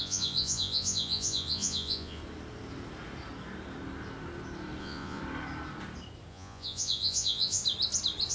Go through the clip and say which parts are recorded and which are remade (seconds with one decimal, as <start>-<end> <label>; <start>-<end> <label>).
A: 0.0-2.2 remade; 2.2-4.8 recorded; 4.8-5.2 remade; 5.2-6.3 recorded; 6.3-7.6 remade; 7.6-8.3 recorded